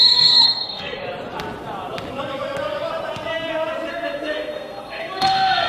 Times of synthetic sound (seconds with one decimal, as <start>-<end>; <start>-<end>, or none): 0.0-1.0; 3.9-5.7